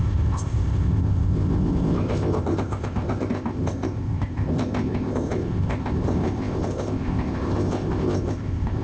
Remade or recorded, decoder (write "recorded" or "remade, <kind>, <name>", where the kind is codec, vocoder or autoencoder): remade, codec, ZipCodec